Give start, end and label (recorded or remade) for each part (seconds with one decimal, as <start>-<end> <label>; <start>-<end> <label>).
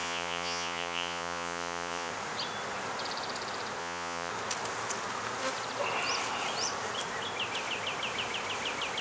0.0-2.1 remade; 2.1-3.8 recorded; 3.8-4.3 remade; 4.3-9.0 recorded